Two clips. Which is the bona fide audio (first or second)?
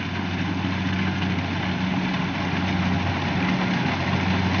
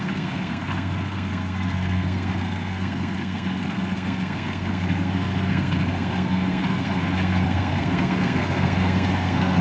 first